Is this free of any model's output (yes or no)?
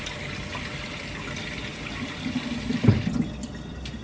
yes